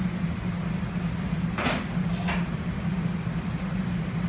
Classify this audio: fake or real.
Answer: real